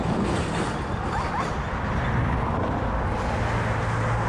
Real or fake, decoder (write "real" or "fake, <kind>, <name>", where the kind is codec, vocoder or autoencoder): real